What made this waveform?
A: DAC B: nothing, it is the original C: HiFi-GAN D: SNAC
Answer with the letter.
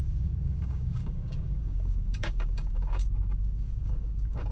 A